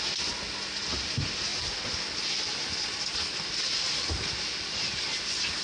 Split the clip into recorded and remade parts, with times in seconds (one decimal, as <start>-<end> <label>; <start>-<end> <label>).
0.0-5.6 recorded